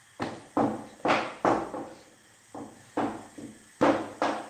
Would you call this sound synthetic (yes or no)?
no